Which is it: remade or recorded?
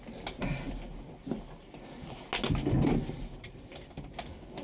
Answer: recorded